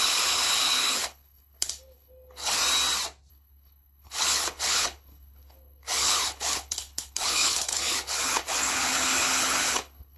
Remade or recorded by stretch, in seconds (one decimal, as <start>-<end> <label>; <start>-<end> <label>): 0.0-2.6 remade; 2.6-3.3 recorded; 3.3-10.2 remade